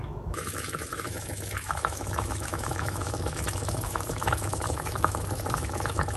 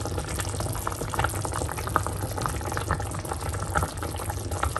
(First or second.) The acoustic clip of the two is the second